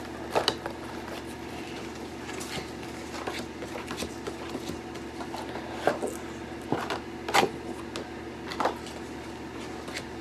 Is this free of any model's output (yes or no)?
yes